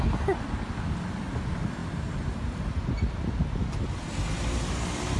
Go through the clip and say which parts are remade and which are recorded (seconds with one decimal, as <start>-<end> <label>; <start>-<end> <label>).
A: 0.0-5.2 recorded